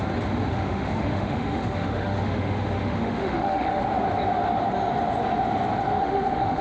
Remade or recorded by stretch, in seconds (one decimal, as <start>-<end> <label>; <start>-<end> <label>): 0.0-0.5 recorded; 0.5-3.8 remade; 3.8-6.0 recorded; 6.0-6.6 remade